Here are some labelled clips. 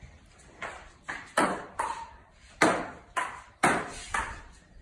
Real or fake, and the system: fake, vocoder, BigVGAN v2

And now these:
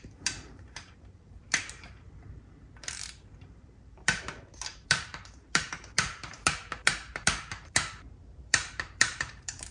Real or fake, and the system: fake, vocoder, BigVGAN v2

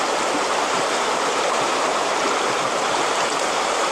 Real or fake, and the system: fake, vocoder, BigVGAN v2